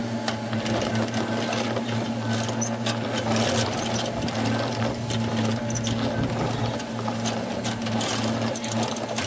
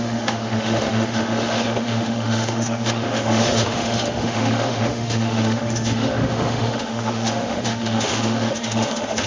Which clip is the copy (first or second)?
second